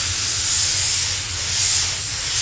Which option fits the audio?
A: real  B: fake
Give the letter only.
A